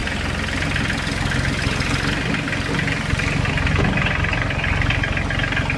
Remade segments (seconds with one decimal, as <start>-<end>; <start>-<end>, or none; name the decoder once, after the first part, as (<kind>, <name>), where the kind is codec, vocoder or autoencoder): none